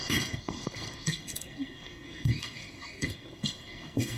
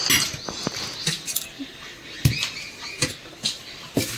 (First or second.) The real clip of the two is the second